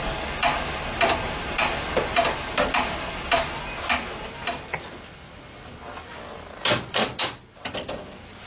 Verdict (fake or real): real